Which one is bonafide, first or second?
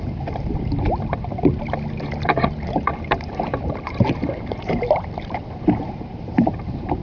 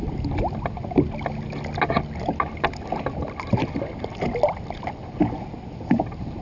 second